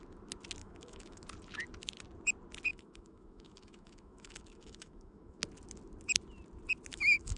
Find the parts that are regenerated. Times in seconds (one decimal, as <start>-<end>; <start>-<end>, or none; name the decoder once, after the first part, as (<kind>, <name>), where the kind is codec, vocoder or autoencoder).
0.6-1.2 (autoencoder, DAC-VAE); 2.7-5.4; 6.9-7.4

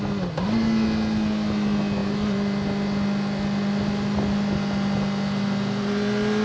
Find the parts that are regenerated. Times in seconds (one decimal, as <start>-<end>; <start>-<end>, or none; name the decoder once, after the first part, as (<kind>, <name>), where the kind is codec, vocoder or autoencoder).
none

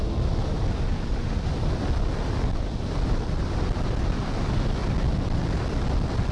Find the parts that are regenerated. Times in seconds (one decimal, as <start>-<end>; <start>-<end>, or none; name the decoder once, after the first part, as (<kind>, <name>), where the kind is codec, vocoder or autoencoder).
none

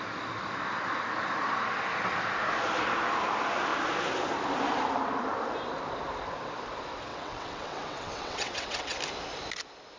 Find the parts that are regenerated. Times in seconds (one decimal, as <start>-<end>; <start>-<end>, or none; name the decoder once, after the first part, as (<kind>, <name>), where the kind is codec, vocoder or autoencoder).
7.1-9.0 (vocoder, WaveNeXt)

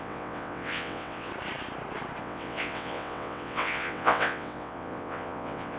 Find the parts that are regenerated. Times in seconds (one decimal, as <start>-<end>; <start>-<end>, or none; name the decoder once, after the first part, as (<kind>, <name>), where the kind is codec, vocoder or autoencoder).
0.0-1.3 (vocoder, WaveNeXt); 2.2-5.8

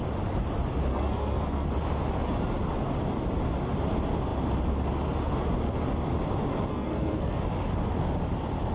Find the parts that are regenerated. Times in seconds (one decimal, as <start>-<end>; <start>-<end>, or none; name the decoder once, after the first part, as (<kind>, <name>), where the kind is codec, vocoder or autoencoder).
0.9-1.7 (codec, SNAC); 6.7-7.4

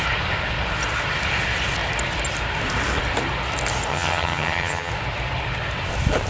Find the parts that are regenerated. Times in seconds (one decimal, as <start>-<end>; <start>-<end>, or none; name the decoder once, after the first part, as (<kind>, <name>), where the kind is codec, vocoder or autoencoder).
3.9-4.9 (vocoder, HiFi-GAN)

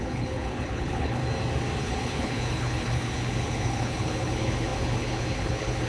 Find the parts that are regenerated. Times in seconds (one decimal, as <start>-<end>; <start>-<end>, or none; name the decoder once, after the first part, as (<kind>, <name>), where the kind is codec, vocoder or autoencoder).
0.0-1.2 (codec, HILCodec); 1.8-5.9